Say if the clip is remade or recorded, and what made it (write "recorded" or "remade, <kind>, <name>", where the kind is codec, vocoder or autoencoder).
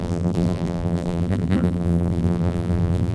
remade, vocoder, BigVGAN v2